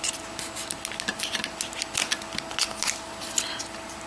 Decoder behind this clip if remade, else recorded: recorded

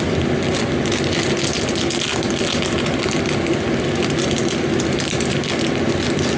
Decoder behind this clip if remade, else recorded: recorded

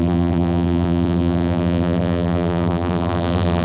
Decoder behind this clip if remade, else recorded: remade, vocoder, BigVGAN v2